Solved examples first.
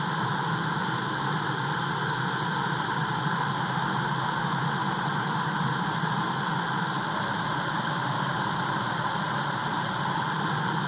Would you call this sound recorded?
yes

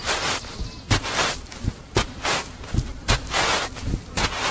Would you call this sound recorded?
yes